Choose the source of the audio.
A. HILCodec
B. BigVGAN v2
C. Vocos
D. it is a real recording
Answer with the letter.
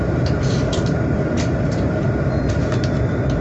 B